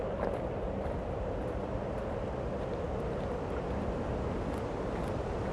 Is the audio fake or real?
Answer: real